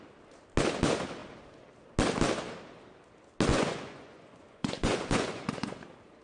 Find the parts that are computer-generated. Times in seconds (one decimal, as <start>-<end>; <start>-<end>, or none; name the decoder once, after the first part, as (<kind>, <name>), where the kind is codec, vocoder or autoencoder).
3.5-5.8 (vocoder, Vocos)